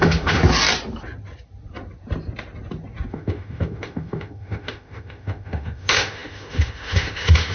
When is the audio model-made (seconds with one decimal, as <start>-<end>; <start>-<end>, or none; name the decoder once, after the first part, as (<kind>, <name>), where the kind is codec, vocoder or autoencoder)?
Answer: 0.0-0.4 (autoencoder, DAC-VAE); 3.1-7.5